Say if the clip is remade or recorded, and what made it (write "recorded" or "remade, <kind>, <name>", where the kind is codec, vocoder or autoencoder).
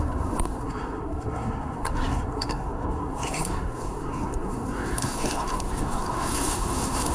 remade, codec, SNAC